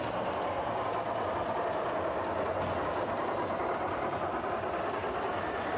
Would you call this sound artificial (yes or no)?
no